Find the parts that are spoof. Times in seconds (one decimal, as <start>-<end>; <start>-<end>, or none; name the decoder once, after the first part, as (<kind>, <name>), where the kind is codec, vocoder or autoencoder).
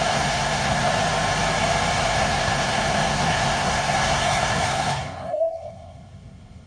0.0-0.9 (codec, SNAC); 2.0-6.7